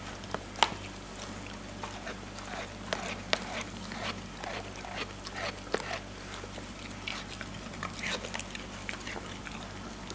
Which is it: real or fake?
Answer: real